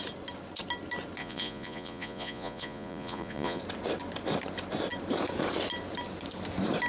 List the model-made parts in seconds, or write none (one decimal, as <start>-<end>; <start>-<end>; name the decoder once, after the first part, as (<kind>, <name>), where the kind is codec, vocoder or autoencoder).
1.2-3.6 (vocoder, Vocos)